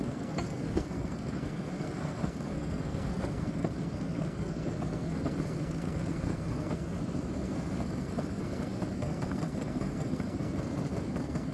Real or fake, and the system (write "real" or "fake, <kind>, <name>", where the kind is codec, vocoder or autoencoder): fake, codec, SNAC